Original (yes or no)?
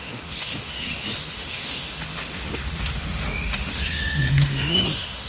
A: no